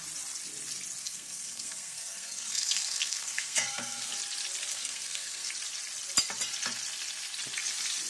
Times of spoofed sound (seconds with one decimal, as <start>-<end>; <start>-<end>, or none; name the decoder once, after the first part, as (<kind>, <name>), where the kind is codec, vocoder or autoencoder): 1.0-4.1 (codec, SNAC); 4.7-5.5